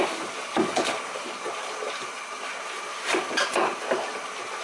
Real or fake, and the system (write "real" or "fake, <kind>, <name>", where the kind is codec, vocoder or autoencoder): real